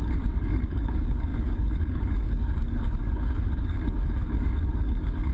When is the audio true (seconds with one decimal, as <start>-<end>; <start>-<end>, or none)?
none